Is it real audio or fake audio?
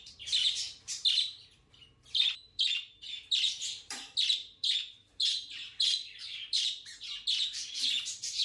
fake